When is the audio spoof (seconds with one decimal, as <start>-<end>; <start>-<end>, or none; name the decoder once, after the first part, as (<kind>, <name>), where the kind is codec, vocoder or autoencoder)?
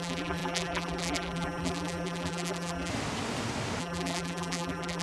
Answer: 0.0-2.9 (vocoder, BigVGAN v2); 3.8-5.0